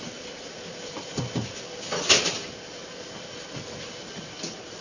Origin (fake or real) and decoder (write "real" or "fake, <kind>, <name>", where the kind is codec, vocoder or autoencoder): real